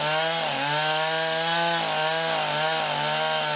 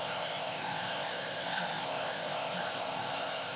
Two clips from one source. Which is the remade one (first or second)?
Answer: second